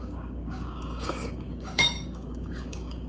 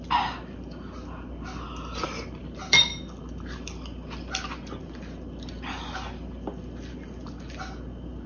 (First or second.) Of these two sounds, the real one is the second